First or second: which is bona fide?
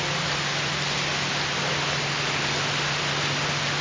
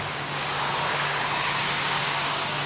first